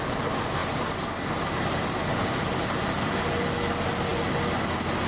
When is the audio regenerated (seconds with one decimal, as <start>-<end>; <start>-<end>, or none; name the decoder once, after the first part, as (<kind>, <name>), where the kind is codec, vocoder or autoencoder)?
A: none